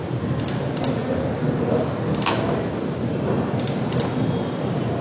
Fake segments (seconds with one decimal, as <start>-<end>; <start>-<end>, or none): none